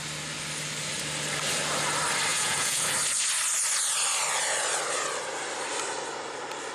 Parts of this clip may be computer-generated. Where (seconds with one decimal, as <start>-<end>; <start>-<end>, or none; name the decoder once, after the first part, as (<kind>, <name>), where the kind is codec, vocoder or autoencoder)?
2.3-2.9 (vocoder, Vocos)